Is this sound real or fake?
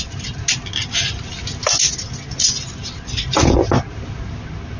real